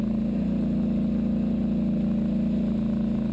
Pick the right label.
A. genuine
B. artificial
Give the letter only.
A